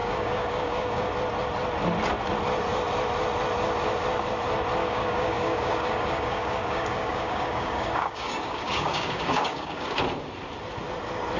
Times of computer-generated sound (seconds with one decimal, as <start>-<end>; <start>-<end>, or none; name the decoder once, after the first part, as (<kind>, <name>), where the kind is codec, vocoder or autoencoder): 0.0-1.1 (codec, DAC); 4.8-10.0